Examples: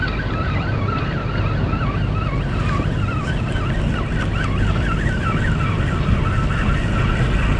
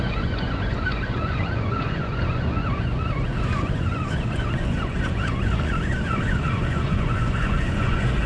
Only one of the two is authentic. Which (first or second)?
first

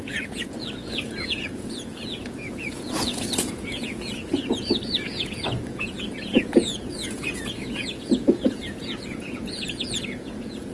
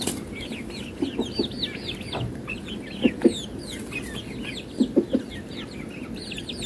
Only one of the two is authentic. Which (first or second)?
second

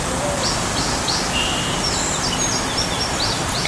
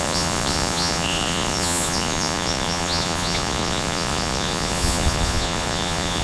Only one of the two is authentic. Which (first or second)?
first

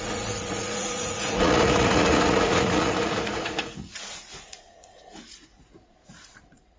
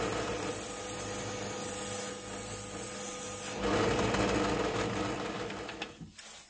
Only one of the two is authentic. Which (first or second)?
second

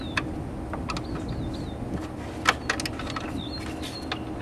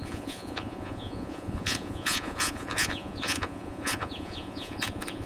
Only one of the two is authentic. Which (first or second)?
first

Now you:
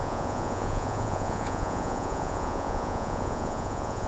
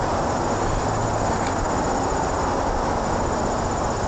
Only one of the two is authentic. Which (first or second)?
second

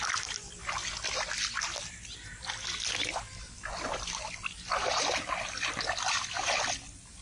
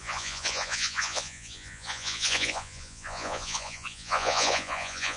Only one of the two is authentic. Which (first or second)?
first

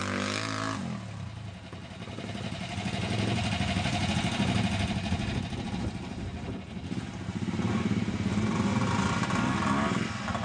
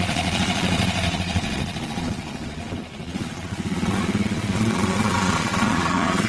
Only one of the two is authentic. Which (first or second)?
first